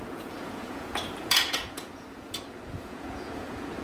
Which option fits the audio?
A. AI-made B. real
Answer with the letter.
A